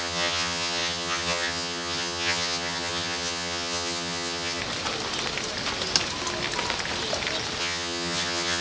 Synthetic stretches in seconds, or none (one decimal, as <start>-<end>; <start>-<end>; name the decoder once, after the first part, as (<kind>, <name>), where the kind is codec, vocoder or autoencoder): 0.0-4.6 (vocoder, HiFi-GAN); 7.6-8.6